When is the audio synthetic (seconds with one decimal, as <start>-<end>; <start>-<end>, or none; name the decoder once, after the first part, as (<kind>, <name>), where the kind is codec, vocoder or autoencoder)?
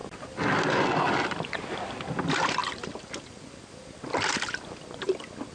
none